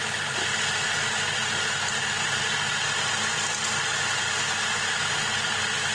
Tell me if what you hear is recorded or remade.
recorded